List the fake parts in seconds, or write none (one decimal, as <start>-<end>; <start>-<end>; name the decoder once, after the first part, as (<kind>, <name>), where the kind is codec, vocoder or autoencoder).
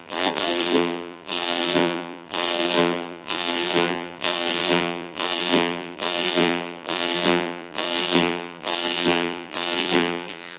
0.0-10.6 (vocoder, BigVGAN v2)